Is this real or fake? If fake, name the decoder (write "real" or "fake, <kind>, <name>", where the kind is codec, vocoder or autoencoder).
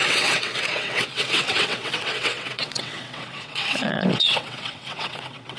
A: fake, vocoder, WaveNeXt